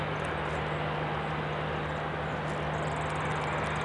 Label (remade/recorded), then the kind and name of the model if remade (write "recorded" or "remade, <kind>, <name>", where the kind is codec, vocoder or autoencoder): recorded